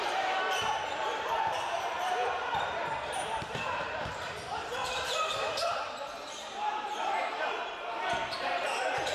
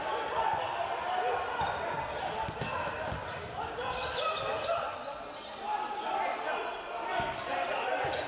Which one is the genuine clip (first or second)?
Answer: second